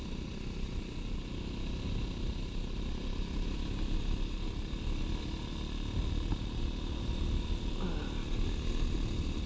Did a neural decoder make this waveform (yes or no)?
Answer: no